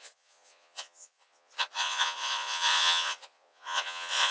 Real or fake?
fake